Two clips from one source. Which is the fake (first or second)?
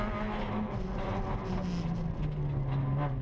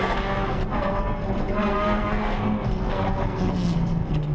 second